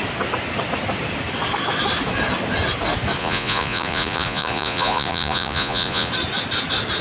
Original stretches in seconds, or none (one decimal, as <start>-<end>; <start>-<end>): 0.0-3.2; 6.1-7.0